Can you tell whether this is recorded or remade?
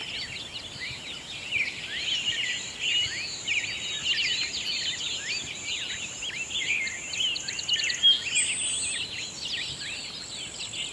recorded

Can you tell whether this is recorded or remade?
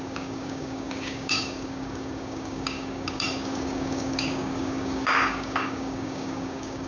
remade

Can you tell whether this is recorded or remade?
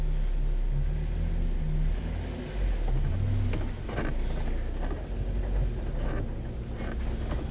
recorded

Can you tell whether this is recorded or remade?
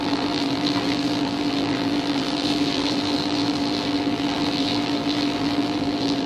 remade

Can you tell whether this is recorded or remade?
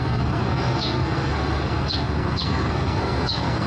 remade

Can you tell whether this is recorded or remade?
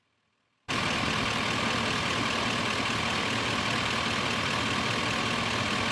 recorded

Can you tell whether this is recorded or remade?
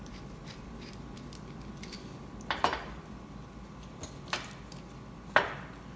recorded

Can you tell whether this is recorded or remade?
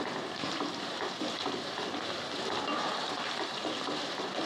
remade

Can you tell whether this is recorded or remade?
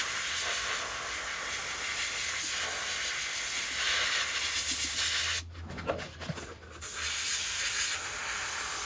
recorded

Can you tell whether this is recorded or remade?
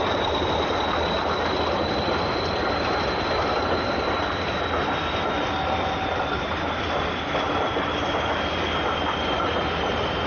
recorded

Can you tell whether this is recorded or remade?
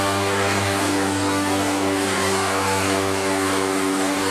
remade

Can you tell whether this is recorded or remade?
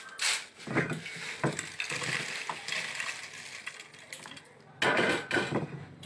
recorded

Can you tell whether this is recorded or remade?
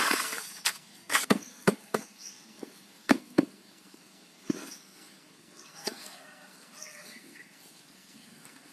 remade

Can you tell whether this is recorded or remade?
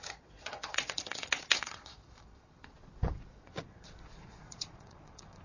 remade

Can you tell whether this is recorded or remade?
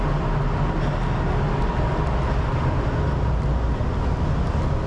recorded